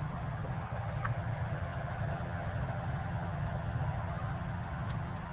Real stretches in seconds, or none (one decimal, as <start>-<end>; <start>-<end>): none